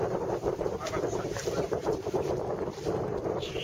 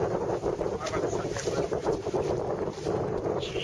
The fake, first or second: first